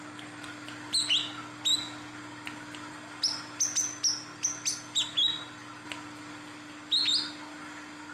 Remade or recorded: recorded